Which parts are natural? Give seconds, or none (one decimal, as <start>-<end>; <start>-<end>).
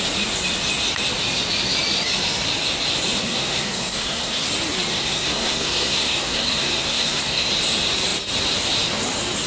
0.0-3.2; 4.5-4.9; 7.5-9.5